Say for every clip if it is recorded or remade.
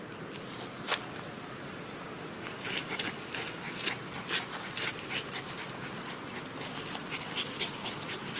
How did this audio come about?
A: recorded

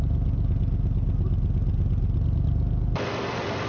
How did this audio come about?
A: recorded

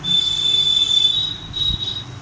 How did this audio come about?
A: recorded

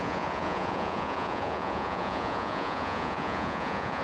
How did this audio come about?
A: remade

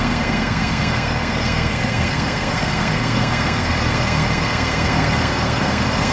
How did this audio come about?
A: remade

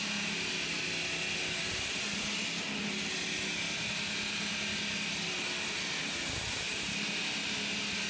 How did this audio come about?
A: recorded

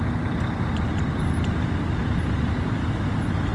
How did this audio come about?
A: recorded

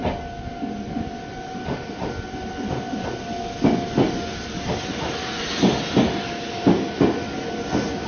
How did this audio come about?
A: recorded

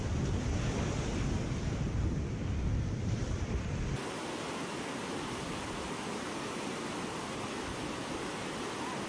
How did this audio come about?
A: recorded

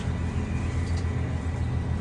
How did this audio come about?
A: recorded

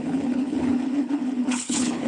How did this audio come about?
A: remade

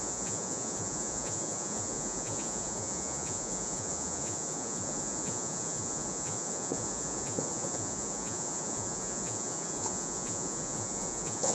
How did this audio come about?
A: remade